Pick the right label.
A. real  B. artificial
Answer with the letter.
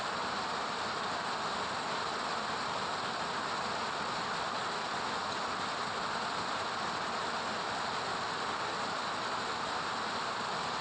A